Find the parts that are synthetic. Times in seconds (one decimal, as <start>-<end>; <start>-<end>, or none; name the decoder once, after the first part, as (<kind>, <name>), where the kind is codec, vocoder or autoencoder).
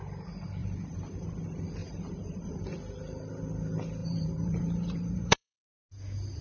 0.6-1.3 (vocoder, BigVGAN v2); 1.8-2.6; 4.0-5.8